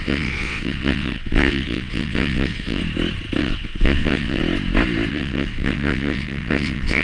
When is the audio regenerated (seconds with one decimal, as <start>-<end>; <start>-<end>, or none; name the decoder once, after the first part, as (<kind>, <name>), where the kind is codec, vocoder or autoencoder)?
0.0-2.8 (vocoder, WaveNeXt); 3.4-4.4; 5.1-7.0